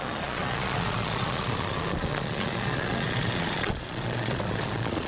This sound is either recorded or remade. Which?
remade